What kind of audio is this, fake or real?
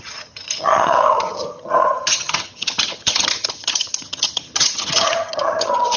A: fake